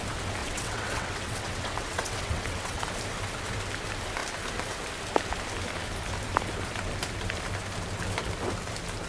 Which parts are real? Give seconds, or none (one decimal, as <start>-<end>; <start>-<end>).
0.0-0.4; 2.8-9.1